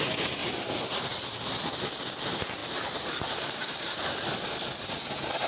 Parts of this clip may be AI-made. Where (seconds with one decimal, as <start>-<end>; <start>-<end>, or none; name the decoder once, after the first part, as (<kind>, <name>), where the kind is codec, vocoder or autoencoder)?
0.4-1.0 (vocoder, BigVGAN v2); 2.6-3.9